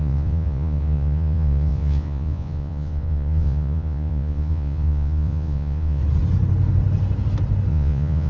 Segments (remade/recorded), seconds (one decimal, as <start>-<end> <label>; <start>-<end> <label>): 0.0-6.0 remade; 6.0-7.7 recorded; 7.7-8.3 remade